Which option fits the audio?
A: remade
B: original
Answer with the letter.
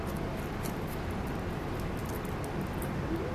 B